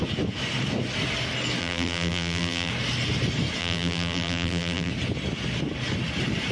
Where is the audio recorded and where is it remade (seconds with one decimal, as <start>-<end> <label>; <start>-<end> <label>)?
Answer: 0.0-1.6 recorded; 1.6-2.7 remade; 2.7-3.6 recorded; 3.6-4.9 remade; 4.9-6.5 recorded